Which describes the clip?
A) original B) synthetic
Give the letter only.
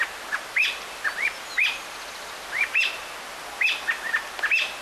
A